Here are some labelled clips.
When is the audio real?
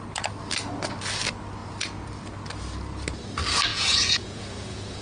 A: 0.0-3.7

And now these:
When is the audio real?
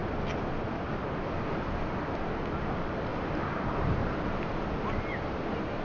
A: 0.0-5.8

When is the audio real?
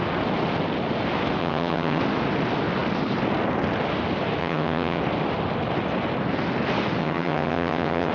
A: 0.0-1.4; 2.0-4.4; 5.0-7.0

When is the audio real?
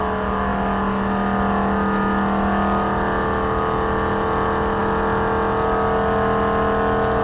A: 0.0-7.2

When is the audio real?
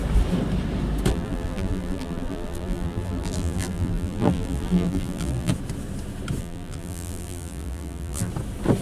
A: 0.0-1.1; 5.5-6.4; 8.3-8.8